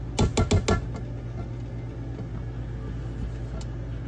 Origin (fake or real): real